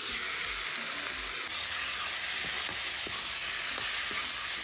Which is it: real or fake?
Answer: real